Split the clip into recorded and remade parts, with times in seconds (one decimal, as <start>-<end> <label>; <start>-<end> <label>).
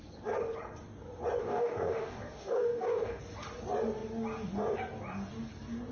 0.0-1.4 recorded; 1.4-3.2 remade; 3.2-5.9 recorded